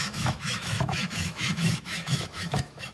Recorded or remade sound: remade